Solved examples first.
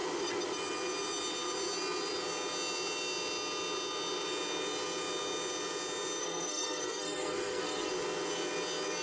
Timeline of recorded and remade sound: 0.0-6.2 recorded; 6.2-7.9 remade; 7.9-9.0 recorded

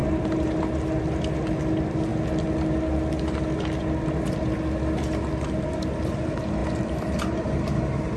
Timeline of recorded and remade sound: 0.0-0.6 remade; 0.6-8.2 recorded

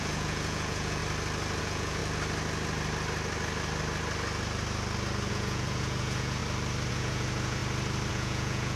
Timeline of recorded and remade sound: 0.0-1.0 remade; 1.0-1.6 recorded; 1.6-2.0 remade; 2.0-5.3 recorded; 5.3-6.4 remade; 6.4-6.9 recorded; 6.9-7.6 remade; 7.6-8.1 recorded; 8.1-8.8 remade

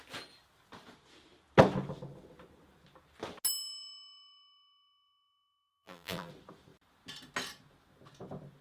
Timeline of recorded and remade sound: 0.0-5.7 recorded; 5.7-6.3 remade; 6.3-8.6 recorded

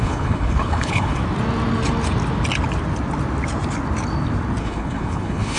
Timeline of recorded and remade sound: 0.0-1.2 remade; 1.2-4.6 recorded; 4.6-5.6 remade

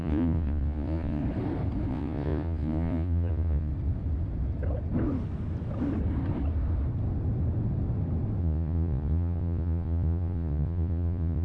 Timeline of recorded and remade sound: 0.0-1.2 remade; 1.2-1.9 recorded; 1.9-3.7 remade; 3.7-8.4 recorded; 8.4-11.4 remade

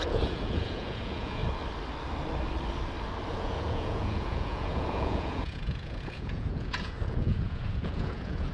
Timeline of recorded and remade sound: 0.0-1.4 remade; 1.4-3.3 recorded; 3.3-8.5 remade